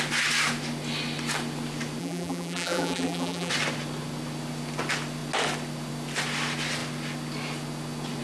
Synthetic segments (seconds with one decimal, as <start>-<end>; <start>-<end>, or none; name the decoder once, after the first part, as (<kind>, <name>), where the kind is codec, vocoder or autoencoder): 2.0-3.5 (vocoder, BigVGAN v2)